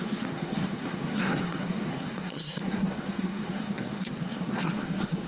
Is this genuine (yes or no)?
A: no